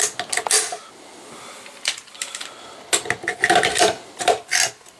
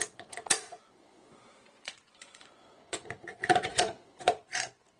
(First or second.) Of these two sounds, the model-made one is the second